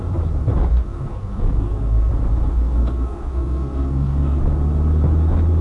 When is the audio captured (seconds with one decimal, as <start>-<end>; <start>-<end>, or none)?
0.0-0.7; 2.1-2.5; 4.4-5.6